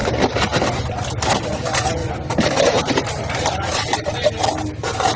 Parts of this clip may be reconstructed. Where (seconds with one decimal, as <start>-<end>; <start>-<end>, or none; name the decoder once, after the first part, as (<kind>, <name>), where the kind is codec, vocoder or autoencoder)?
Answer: none